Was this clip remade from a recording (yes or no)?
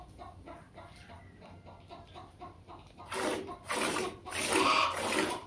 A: no